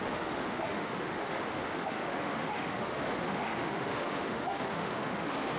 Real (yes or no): no